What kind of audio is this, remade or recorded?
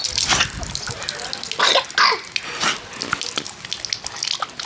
recorded